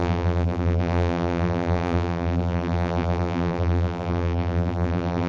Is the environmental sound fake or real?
fake